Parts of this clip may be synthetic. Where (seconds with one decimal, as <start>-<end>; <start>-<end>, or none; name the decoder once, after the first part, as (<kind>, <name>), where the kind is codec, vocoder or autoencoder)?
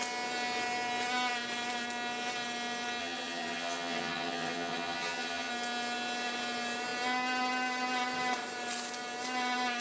3.0-5.5 (vocoder, HiFi-GAN)